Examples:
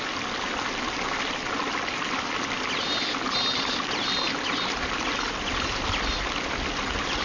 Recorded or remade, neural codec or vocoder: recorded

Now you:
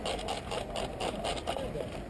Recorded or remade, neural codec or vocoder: recorded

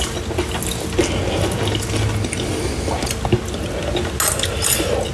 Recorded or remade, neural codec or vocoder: recorded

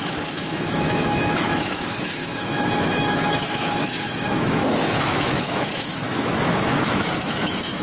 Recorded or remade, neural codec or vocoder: remade, autoencoder, DAC-VAE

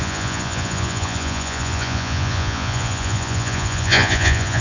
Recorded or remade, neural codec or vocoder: remade, vocoder, Vocos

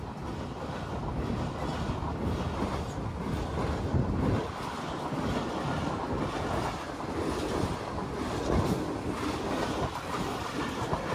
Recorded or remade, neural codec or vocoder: recorded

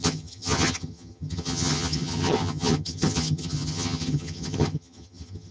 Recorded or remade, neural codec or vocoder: remade, vocoder, HiFi-GAN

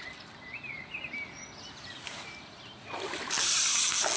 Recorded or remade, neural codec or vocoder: recorded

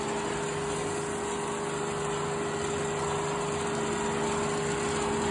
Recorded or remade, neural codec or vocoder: recorded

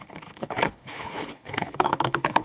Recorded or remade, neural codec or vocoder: remade, codec, HILCodec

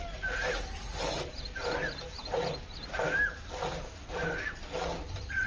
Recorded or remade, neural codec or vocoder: recorded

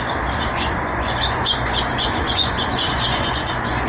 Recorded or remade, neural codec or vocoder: remade, vocoder, Vocos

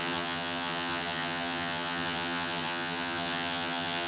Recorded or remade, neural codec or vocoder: remade, vocoder, HiFi-GAN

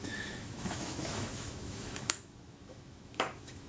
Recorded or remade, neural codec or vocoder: remade, autoencoder, DAC-VAE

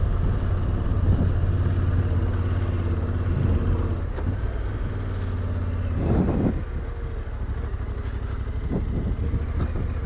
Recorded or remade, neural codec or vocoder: recorded